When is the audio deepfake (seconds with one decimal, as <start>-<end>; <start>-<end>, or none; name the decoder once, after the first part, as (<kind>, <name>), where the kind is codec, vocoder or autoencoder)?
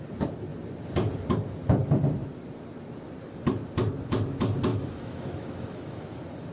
4.7-6.0 (autoencoder, DAC-VAE)